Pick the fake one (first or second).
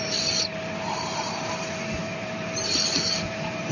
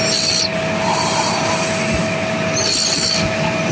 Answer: first